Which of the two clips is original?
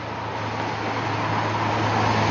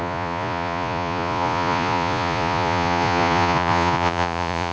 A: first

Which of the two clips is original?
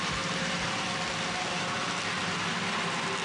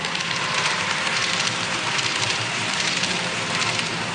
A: first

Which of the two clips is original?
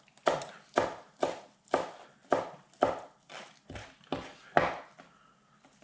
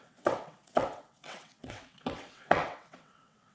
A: first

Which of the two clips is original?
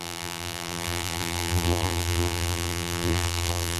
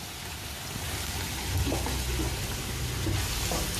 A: second